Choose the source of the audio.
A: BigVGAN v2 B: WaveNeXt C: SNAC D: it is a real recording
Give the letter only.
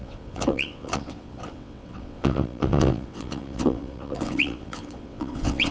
B